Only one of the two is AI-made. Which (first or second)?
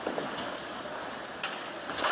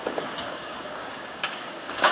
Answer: second